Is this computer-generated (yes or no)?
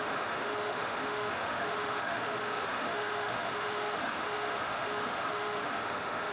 yes